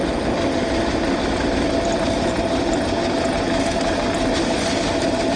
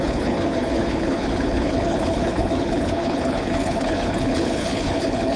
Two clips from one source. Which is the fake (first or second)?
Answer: second